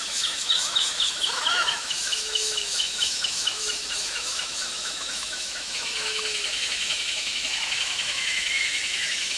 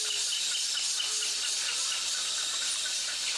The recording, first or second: second